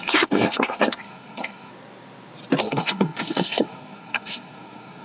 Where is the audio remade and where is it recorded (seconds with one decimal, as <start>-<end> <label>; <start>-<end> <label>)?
0.0-1.7 remade; 1.7-2.6 recorded; 2.6-5.0 remade